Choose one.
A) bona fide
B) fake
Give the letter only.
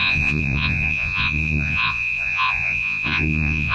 B